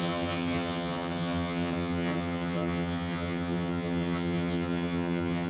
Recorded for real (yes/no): no